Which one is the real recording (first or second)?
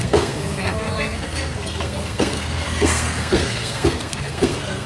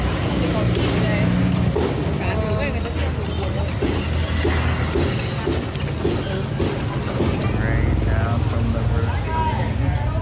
second